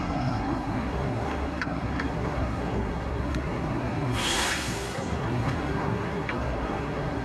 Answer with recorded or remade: remade